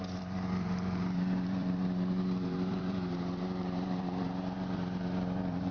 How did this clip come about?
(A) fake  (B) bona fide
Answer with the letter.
A